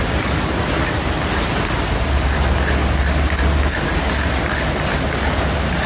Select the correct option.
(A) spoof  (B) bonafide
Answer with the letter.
B